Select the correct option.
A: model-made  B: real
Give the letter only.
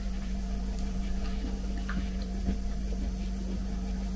B